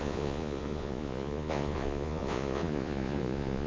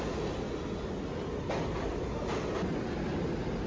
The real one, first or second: second